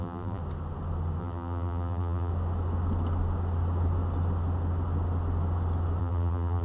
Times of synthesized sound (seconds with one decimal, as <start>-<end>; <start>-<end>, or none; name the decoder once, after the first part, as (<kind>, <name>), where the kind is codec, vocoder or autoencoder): 0.0-0.4 (vocoder, BigVGAN v2); 1.2-2.3; 6.0-6.6